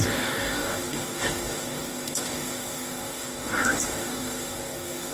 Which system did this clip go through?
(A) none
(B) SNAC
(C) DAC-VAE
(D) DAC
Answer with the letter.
D